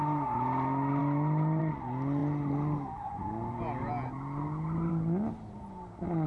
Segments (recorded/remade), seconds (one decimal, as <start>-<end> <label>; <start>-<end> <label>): 0.0-6.3 recorded